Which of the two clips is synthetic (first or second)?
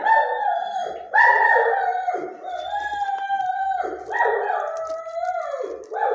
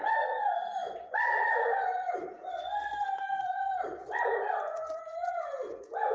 second